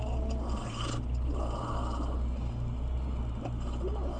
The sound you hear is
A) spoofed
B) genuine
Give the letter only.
B